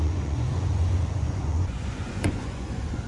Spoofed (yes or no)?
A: yes